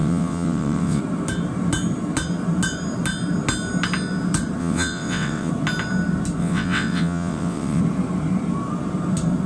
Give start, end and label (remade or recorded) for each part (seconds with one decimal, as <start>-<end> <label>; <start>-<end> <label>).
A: 0.0-1.0 remade; 1.0-4.6 recorded; 4.6-5.5 remade; 5.5-6.4 recorded; 6.4-7.8 remade; 7.8-9.5 recorded